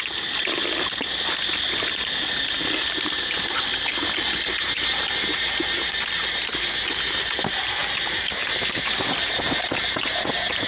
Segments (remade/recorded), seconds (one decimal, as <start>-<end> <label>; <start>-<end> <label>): 0.0-10.7 recorded